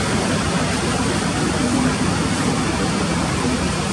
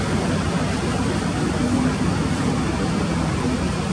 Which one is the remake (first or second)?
first